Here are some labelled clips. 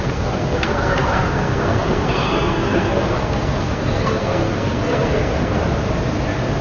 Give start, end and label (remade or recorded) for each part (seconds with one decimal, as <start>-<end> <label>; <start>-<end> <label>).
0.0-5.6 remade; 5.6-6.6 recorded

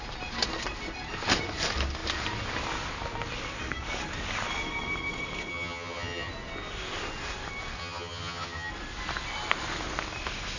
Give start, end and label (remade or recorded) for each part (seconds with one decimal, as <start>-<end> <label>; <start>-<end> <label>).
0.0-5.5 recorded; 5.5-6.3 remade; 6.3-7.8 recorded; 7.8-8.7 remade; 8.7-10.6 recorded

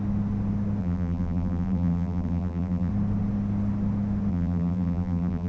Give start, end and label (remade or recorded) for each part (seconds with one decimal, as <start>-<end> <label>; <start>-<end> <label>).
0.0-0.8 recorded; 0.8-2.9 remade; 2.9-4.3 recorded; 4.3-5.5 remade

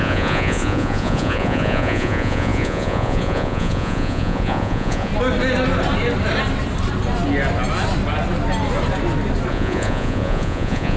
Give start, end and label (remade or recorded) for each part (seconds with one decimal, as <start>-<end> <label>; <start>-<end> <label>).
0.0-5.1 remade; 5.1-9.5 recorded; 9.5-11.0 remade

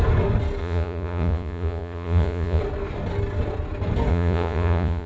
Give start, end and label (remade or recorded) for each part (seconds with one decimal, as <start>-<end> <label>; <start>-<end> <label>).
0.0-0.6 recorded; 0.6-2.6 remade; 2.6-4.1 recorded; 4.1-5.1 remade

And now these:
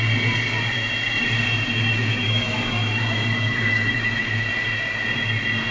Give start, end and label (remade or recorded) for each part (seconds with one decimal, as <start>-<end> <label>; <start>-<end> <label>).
0.0-1.9 recorded; 1.9-4.5 remade; 4.5-5.7 recorded